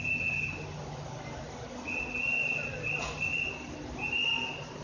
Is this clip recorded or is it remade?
recorded